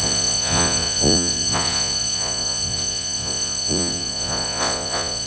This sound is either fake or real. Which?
fake